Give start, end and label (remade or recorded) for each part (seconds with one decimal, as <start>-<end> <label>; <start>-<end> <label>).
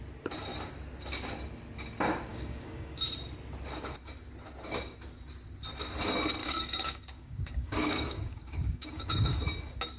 0.0-2.3 recorded; 2.3-3.0 remade; 3.0-6.4 recorded; 6.4-9.4 remade; 9.4-10.0 recorded